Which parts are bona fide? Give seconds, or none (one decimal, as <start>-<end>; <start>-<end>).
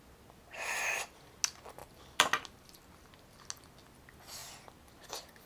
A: 0.0-5.5